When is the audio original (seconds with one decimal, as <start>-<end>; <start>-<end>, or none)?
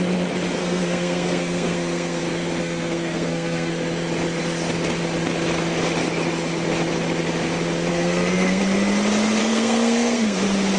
0.0-0.6; 2.2-2.6; 3.7-7.9; 8.6-9.4; 10.4-10.8